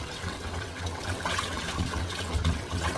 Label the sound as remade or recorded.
remade